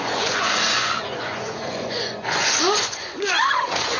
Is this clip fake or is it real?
fake